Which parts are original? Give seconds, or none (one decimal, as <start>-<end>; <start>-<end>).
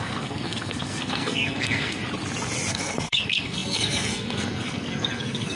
2.0-2.7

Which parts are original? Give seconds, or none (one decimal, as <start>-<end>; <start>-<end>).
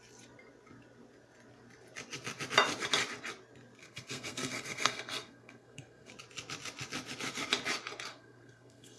0.0-3.8; 6.1-8.1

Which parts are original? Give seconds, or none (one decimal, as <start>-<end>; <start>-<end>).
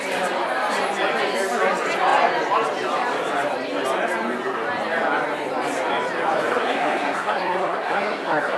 0.0-6.5